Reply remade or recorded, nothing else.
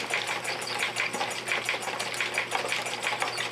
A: recorded